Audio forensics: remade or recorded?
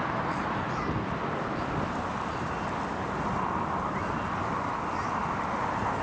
recorded